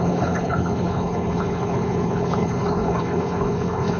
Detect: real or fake fake